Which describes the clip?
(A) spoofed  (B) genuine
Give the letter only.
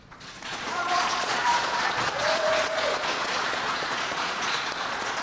A